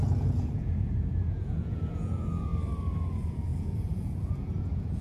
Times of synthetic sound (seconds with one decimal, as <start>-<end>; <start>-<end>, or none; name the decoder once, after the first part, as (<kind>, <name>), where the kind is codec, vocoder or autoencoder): 0.0-2.5 (vocoder, Vocos); 3.1-5.0